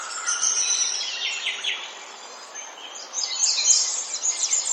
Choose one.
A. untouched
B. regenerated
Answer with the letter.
A